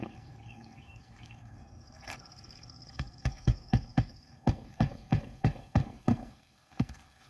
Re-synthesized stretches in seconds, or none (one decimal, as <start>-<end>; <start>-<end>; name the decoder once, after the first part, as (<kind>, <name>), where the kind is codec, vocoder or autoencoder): 0.0-7.3 (codec, SNAC)